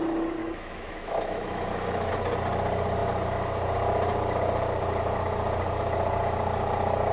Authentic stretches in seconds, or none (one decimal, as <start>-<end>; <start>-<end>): 0.0-0.4; 2.1-7.1